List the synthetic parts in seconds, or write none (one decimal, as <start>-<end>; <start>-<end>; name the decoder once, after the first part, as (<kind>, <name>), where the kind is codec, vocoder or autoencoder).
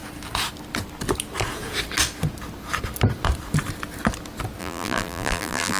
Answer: 4.6-5.8 (vocoder, BigVGAN v2)